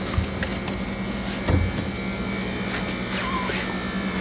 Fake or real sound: real